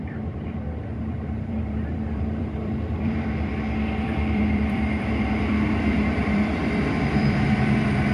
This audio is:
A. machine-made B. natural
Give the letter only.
A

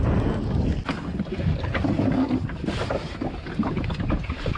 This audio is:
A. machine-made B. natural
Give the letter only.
B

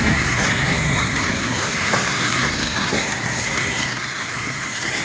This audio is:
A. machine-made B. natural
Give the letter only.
A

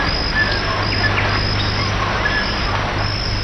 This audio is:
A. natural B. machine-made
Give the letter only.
A